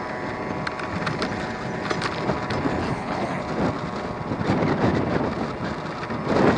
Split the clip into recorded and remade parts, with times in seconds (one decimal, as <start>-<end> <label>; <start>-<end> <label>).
0.0-2.8 recorded; 2.8-3.4 remade; 3.4-6.6 recorded